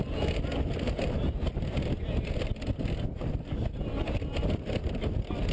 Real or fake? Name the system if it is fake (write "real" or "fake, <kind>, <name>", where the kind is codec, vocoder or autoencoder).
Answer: real